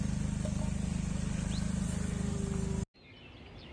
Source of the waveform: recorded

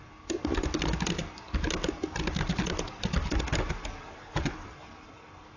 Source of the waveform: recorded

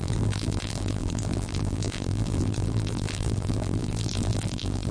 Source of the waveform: remade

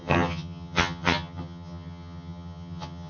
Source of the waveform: remade